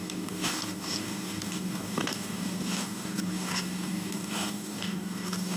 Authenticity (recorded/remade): remade